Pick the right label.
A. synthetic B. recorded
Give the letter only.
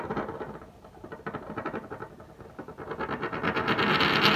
B